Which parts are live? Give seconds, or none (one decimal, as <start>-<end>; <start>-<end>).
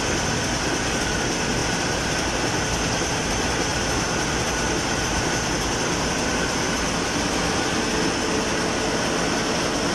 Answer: 0.0-9.9